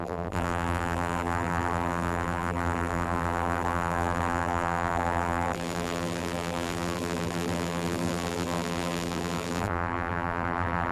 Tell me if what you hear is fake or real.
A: fake